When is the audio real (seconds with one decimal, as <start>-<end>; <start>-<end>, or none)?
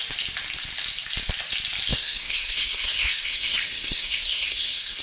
0.0-1.9